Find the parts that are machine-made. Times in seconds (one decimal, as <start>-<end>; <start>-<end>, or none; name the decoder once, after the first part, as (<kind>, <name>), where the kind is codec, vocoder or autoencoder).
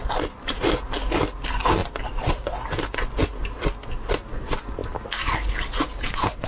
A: none